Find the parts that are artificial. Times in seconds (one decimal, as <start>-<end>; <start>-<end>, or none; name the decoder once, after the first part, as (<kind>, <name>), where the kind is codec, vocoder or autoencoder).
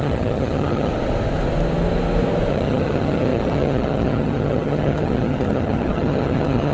0.0-0.9 (vocoder, HiFi-GAN); 2.5-6.7